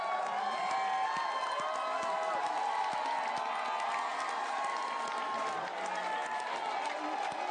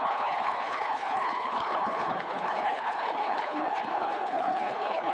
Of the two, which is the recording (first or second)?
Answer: first